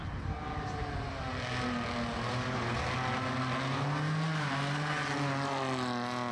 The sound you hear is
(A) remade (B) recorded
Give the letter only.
B